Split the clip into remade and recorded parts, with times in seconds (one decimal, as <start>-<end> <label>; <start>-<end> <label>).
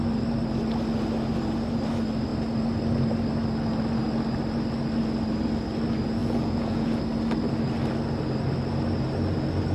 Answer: 0.0-6.2 recorded; 6.2-7.0 remade; 7.0-9.7 recorded